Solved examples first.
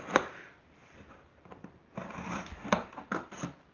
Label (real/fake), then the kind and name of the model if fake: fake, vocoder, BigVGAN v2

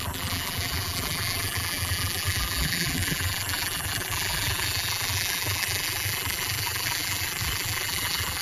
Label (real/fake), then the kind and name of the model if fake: fake, vocoder, BigVGAN v2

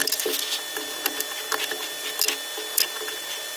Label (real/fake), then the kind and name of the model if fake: real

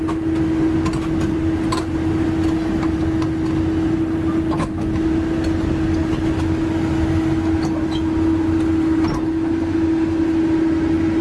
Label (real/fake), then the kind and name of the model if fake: real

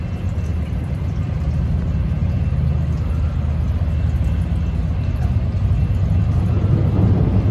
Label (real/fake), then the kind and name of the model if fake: real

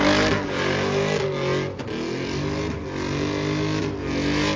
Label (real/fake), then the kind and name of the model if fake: real